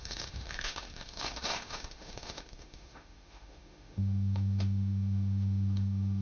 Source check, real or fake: fake